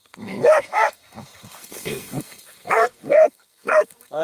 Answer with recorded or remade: remade